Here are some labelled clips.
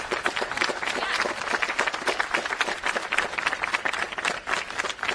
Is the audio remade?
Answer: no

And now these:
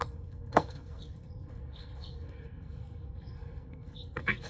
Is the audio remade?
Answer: yes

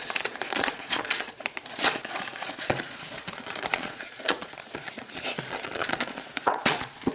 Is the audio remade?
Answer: yes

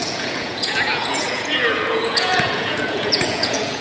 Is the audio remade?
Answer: yes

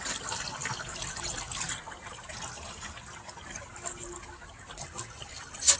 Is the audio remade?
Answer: no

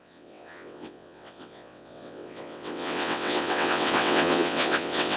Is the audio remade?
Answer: yes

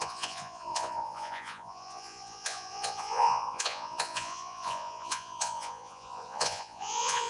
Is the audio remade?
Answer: yes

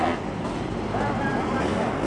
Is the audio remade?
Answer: no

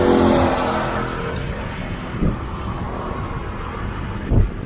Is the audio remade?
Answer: no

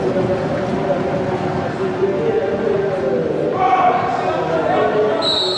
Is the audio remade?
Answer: no